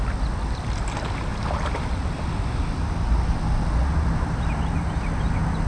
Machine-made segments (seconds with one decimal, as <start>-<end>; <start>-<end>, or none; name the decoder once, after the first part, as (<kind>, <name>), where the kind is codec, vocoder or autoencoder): none